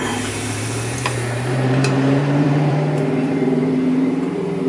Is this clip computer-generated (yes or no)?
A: yes